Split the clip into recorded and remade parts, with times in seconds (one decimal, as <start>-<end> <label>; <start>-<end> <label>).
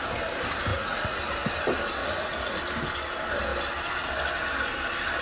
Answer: 0.0-0.7 recorded; 0.7-1.2 remade; 1.2-2.0 recorded; 2.0-2.6 remade; 2.6-5.2 recorded